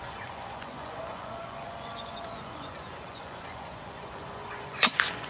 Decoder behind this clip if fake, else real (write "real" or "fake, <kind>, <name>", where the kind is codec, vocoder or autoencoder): fake, vocoder, Vocos